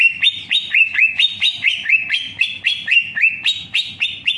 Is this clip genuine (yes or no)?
yes